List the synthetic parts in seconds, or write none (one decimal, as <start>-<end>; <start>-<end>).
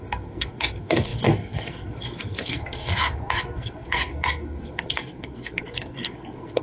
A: 0.0-6.6